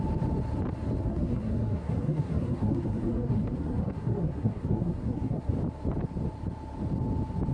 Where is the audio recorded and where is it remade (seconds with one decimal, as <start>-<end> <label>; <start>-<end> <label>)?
0.0-1.0 recorded; 1.0-5.5 remade; 5.5-7.5 recorded